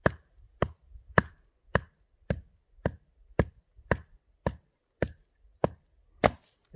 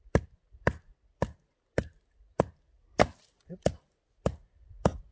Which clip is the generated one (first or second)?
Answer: second